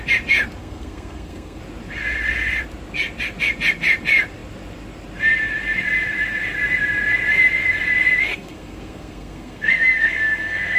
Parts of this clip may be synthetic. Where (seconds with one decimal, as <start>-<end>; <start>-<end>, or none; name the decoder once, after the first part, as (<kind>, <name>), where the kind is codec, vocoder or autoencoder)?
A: 0.6-1.6 (codec, SNAC); 8.3-10.8